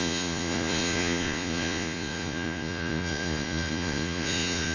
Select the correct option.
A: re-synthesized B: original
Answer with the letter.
A